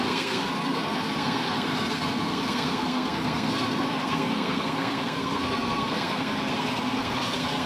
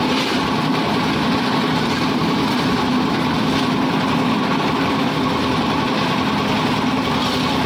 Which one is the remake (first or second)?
first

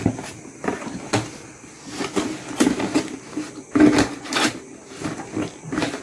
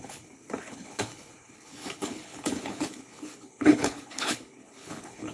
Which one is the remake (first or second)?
second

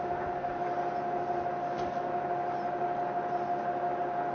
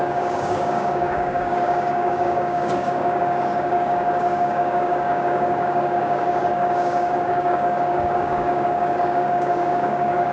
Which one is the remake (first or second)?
second